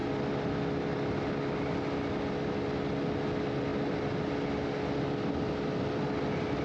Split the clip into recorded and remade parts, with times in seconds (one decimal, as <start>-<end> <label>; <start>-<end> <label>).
0.0-6.6 recorded

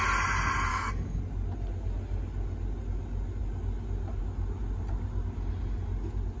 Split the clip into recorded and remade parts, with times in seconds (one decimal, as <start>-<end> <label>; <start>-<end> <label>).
0.0-0.7 recorded; 0.7-1.2 remade; 1.2-6.4 recorded